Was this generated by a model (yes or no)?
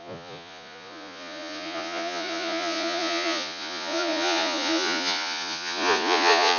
yes